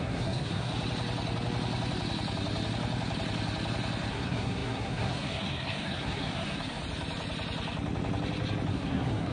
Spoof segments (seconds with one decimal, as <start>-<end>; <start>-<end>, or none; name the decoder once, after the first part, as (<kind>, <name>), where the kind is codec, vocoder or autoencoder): 0.0-0.7 (codec, SNAC); 4.1-6.8; 8.7-9.3